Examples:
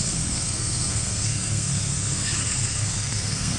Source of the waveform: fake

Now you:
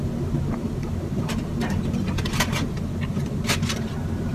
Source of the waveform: real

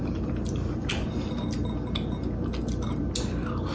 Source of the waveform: real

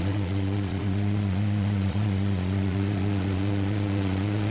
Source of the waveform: fake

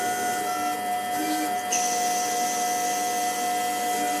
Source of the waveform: real